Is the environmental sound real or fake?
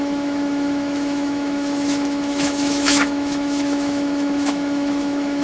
fake